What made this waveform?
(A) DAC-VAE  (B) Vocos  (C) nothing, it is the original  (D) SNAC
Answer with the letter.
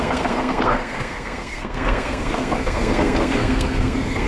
D